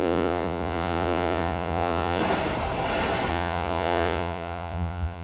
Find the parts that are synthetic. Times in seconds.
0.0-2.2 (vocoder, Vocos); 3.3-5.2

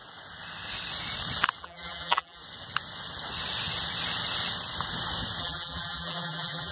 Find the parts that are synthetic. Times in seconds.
1.6-2.4 (vocoder, BigVGAN v2); 5.4-6.7

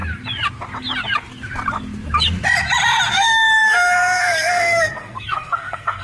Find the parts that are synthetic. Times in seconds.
3.1-6.0 (codec, SNAC)

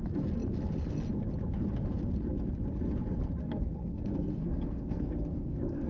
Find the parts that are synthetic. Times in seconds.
3.4-5.9 (codec, SNAC)

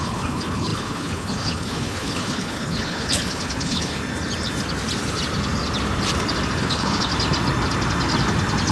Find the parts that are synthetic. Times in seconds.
0.0-4.0 (codec, HILCodec); 6.6-7.1

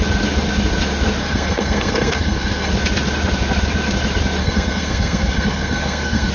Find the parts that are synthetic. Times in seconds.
1.2-2.7 (codec, SNAC); 4.4-6.3